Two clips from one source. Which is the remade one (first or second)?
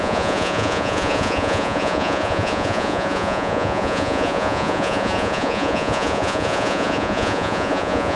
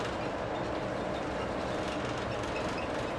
first